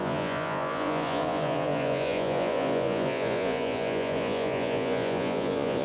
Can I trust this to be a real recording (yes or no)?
no